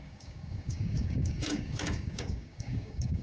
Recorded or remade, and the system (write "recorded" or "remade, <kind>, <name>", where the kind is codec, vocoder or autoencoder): remade, codec, DAC